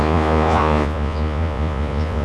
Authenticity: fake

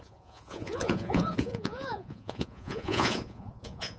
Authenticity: fake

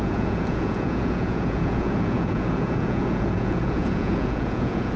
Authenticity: fake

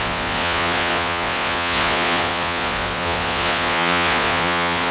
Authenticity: fake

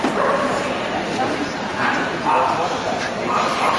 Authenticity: real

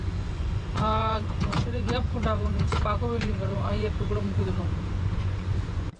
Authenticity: fake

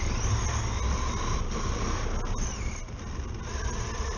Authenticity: real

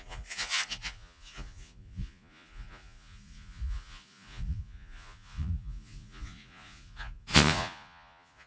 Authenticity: fake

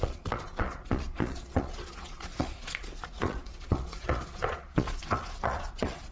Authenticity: fake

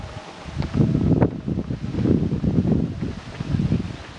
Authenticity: real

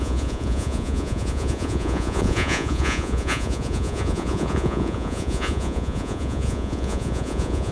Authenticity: fake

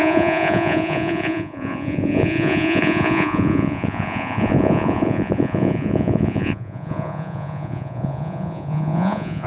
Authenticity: fake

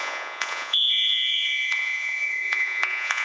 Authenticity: fake